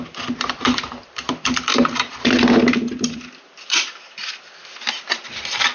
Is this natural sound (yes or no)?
no